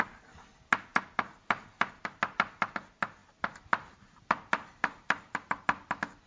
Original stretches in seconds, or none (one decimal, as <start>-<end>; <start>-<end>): 0.0-6.3